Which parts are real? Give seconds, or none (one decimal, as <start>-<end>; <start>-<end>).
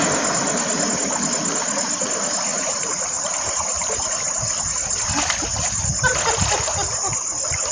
0.0-2.5; 5.0-7.7